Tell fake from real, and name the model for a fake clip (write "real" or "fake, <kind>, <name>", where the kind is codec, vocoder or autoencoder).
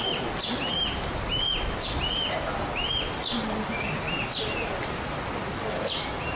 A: real